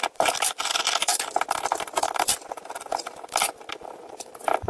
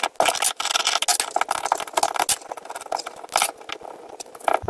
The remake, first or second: first